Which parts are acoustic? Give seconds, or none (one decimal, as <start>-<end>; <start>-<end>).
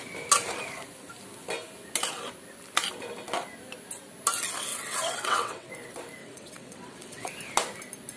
0.0-4.7; 5.7-6.2; 7.3-8.2